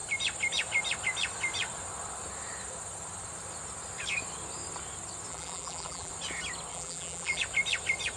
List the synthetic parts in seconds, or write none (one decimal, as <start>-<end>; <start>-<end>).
5.3-6.1; 6.7-7.4